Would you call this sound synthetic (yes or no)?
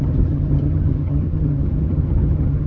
yes